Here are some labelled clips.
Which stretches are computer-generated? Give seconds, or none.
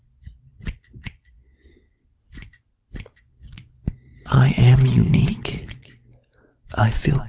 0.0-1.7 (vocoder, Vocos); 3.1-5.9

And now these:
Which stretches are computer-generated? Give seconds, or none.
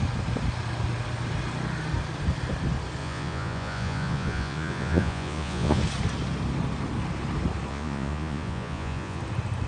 3.0-5.8 (vocoder, Vocos); 7.7-9.2